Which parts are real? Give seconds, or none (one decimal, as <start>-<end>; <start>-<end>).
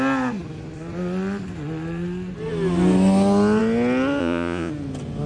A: 0.0-4.2; 4.7-5.3